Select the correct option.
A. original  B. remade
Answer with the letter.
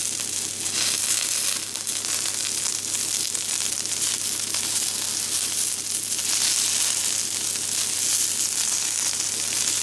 A